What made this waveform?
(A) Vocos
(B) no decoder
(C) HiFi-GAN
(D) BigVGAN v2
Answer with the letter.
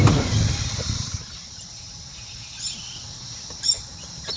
B